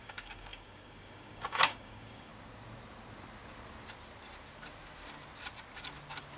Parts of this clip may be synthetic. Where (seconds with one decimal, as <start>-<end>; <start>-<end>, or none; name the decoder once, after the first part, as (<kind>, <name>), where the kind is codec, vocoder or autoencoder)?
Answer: 0.0-2.3 (codec, DAC)